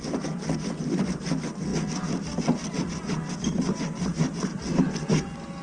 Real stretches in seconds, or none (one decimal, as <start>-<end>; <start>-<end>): 0.0-5.6